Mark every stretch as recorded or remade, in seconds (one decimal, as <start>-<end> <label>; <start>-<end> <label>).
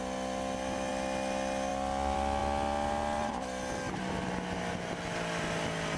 0.0-6.0 recorded